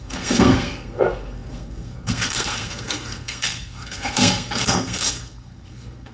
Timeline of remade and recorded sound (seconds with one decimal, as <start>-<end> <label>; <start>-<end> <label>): 0.0-6.1 remade